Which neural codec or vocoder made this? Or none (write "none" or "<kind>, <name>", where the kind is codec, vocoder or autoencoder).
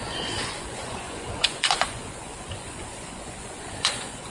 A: vocoder, Vocos